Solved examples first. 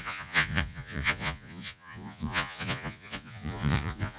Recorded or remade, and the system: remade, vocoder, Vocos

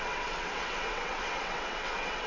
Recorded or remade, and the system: remade, vocoder, WaveNeXt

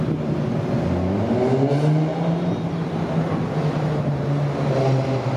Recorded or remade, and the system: recorded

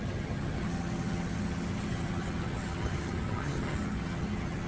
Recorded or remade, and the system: remade, vocoder, HiFi-GAN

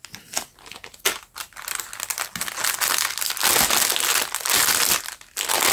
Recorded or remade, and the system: recorded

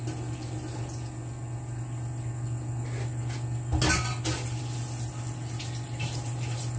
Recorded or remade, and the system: recorded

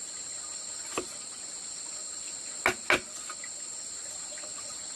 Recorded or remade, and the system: recorded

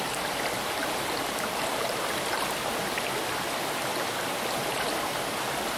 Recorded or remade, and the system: recorded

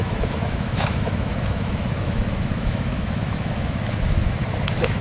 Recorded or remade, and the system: remade, autoencoder, DAC-VAE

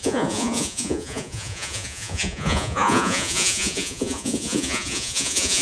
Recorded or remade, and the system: remade, vocoder, Vocos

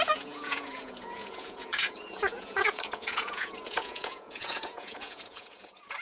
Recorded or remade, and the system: remade, vocoder, Vocos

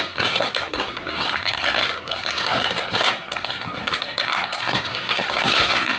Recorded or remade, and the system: remade, codec, SNAC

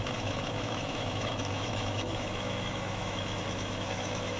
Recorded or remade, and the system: remade, autoencoder, DAC-VAE